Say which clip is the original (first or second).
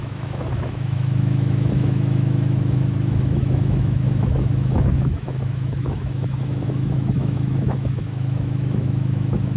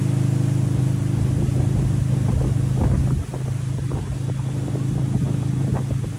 second